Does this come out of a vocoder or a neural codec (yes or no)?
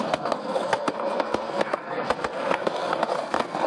yes